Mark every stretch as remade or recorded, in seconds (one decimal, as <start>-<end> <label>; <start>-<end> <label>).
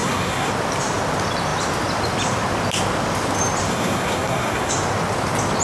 0.0-0.5 remade; 0.5-3.7 recorded; 3.7-4.7 remade; 4.7-5.6 recorded